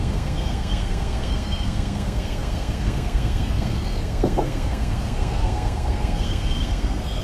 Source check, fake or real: fake